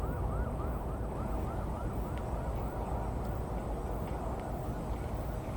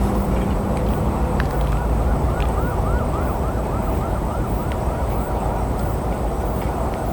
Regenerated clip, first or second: second